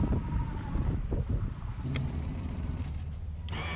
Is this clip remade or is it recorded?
recorded